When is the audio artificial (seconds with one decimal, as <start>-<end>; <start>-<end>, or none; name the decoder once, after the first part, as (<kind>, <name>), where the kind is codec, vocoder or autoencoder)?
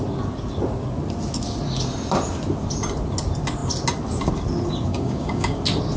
4.9-5.6 (codec, DAC)